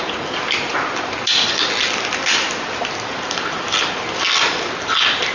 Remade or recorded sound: recorded